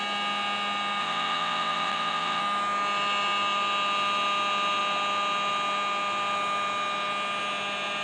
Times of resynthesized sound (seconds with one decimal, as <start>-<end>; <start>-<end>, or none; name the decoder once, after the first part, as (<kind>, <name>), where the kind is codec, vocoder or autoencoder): 1.0-2.4 (vocoder, WaveNeXt)

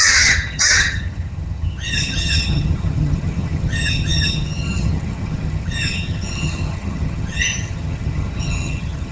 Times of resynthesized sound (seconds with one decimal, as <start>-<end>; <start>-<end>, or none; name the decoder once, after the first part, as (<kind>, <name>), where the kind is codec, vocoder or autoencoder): 0.0-9.1 (vocoder, HiFi-GAN)